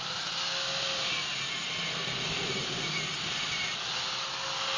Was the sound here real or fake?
real